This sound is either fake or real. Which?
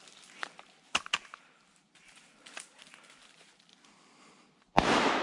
fake